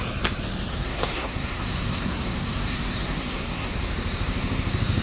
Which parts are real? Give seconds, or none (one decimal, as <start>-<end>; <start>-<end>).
0.0-0.7; 3.7-5.0